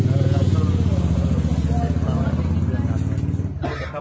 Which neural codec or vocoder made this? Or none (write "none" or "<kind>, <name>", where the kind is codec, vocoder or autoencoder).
none